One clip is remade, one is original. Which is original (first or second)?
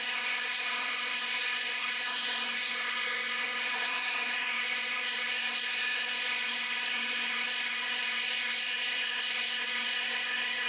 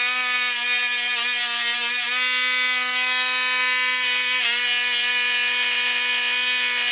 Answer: second